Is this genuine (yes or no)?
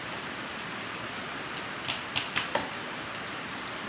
yes